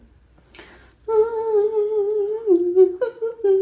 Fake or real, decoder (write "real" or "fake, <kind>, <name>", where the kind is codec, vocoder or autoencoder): real